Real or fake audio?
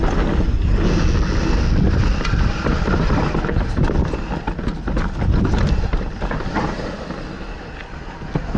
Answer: real